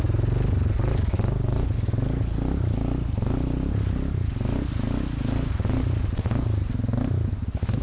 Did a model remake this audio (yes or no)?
no